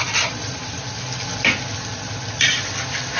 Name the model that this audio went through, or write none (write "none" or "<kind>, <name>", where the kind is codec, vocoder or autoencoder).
none